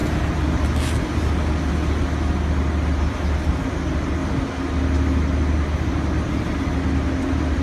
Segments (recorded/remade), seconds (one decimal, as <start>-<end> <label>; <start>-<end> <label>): 0.0-7.6 recorded